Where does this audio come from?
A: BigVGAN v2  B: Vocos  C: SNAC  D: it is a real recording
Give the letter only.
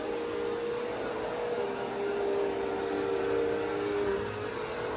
D